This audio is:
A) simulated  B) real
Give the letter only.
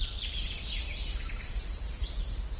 B